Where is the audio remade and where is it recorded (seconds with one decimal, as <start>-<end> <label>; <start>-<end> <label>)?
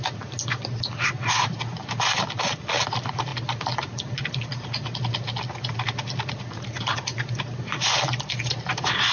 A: 0.0-9.1 recorded